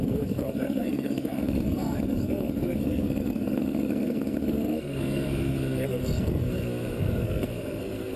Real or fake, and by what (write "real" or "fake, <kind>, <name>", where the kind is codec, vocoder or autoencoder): fake, codec, SNAC